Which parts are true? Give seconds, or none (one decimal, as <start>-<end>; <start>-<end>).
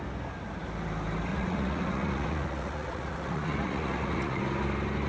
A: 0.0-1.3; 4.4-5.1